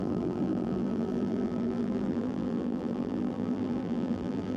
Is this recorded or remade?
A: remade